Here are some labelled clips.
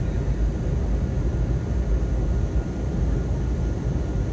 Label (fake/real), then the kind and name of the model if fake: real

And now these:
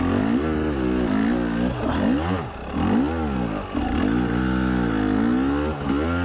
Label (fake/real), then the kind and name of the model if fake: real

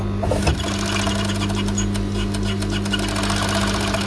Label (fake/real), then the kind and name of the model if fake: real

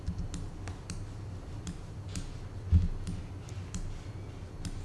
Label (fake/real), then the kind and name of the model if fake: real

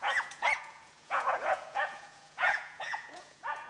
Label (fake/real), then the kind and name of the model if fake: fake, vocoder, Vocos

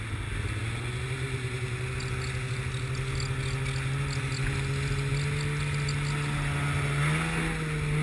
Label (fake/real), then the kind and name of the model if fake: real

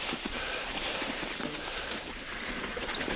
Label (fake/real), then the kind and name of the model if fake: fake, vocoder, BigVGAN v2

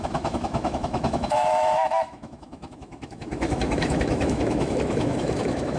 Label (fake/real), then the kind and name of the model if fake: fake, autoencoder, DAC-VAE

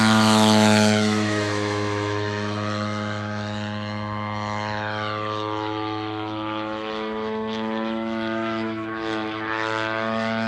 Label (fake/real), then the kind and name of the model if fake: fake, autoencoder, DAC-VAE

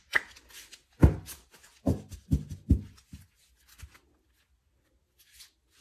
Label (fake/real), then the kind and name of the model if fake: real